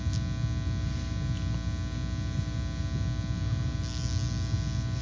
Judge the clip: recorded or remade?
recorded